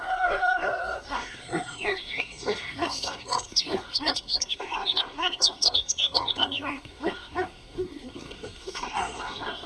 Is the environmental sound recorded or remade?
remade